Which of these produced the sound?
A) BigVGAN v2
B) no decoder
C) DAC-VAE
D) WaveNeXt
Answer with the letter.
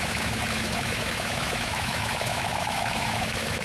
C